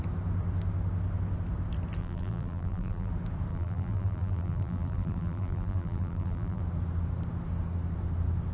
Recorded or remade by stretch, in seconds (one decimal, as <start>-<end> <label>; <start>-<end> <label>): 0.0-2.0 recorded; 2.0-3.1 remade; 3.1-3.5 recorded; 3.5-6.6 remade; 6.6-8.5 recorded